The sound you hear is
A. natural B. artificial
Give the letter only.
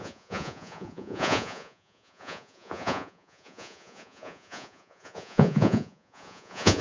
B